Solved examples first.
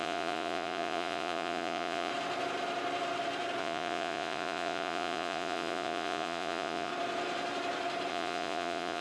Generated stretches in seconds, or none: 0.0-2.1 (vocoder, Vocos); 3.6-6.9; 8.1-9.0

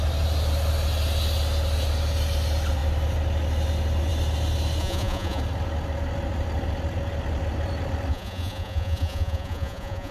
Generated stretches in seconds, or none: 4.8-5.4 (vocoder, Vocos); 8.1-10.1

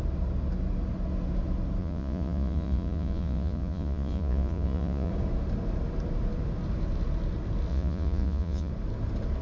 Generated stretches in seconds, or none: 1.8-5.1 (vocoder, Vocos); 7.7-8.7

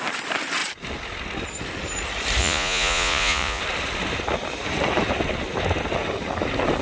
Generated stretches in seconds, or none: 2.4-3.6 (vocoder, Vocos)